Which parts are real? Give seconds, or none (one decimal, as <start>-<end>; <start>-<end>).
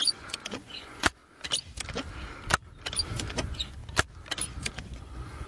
1.2-3.1; 3.8-4.5